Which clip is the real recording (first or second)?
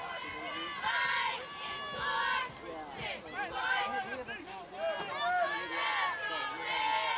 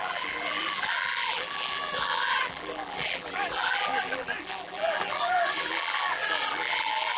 first